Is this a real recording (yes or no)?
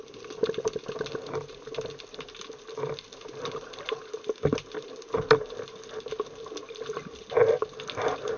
yes